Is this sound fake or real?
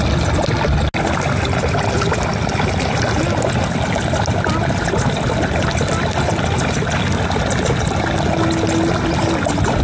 real